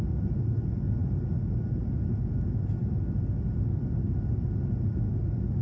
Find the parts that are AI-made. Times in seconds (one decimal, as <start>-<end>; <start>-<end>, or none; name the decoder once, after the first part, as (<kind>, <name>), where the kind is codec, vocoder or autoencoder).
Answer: none